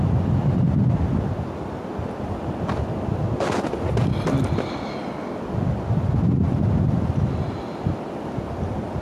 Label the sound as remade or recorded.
recorded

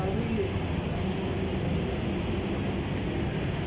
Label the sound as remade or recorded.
recorded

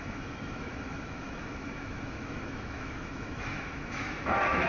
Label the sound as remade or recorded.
remade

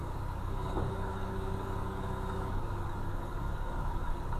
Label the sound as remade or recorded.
remade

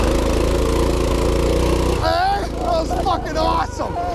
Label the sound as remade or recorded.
recorded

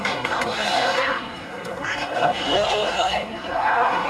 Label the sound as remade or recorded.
remade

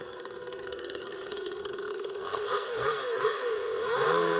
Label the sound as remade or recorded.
remade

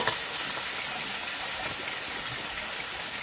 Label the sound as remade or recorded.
recorded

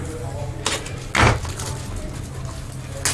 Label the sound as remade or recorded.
recorded